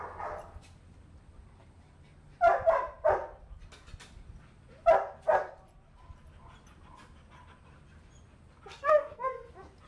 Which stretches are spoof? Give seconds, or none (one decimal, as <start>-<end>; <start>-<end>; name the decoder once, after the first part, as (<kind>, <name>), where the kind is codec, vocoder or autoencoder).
8.7-9.5 (codec, SNAC)